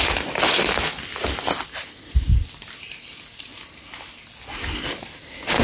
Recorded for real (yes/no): yes